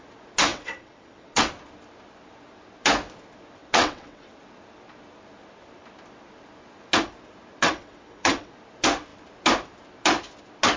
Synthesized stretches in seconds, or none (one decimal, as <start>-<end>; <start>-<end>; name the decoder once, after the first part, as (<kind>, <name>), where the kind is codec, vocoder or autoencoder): 0.5-1.5 (vocoder, WaveNeXt); 3.6-4.4; 7.6-8.5